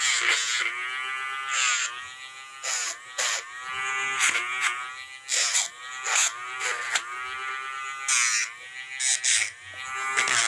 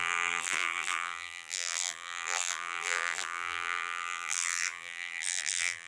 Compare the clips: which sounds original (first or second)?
first